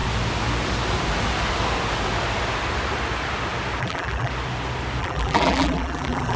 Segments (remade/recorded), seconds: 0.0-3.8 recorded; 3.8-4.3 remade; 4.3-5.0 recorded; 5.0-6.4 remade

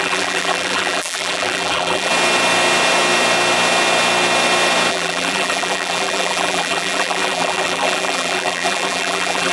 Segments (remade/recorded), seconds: 0.0-2.1 remade; 2.1-4.9 recorded; 4.9-9.5 remade

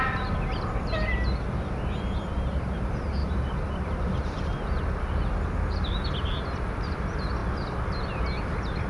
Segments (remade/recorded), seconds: 0.0-3.2 recorded; 3.2-5.0 remade; 5.0-8.9 recorded

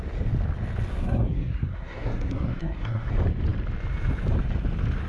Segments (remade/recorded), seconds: 0.0-0.9 recorded; 0.9-3.1 remade; 3.1-5.1 recorded

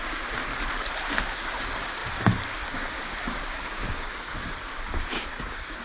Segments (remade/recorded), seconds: 0.0-0.5 remade; 0.5-1.2 recorded; 1.2-5.8 remade